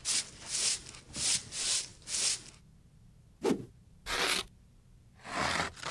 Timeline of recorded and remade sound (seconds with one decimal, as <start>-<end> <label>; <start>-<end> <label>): 0.0-5.9 recorded